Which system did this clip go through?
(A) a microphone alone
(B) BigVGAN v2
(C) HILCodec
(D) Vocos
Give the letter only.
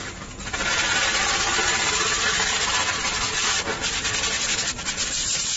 B